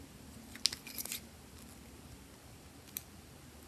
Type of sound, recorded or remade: recorded